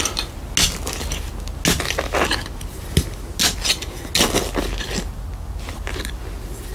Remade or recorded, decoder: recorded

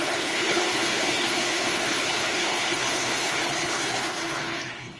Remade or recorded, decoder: remade, codec, HILCodec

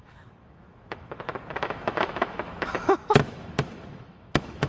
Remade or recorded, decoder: remade, autoencoder, DAC-VAE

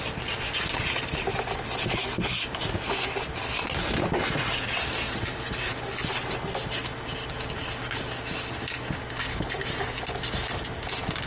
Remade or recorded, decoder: recorded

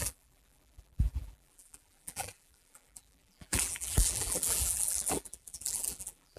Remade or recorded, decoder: remade, vocoder, BigVGAN v2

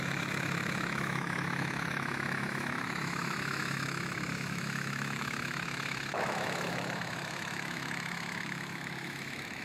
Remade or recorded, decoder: remade, autoencoder, DAC-VAE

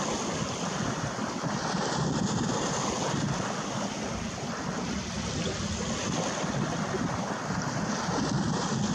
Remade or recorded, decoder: recorded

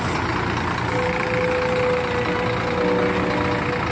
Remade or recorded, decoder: recorded